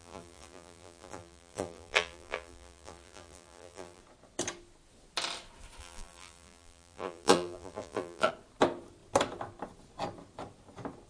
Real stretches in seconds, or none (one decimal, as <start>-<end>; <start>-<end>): 4.0-5.8; 8.3-11.1